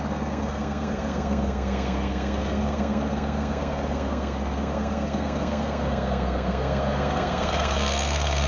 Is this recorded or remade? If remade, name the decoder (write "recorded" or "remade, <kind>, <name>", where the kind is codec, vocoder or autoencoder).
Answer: remade, codec, SNAC